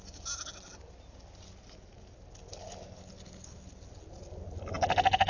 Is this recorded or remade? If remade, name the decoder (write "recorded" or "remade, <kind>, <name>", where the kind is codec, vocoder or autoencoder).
recorded